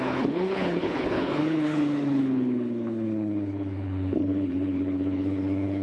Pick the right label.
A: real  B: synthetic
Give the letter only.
B